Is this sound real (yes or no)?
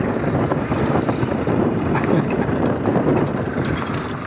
no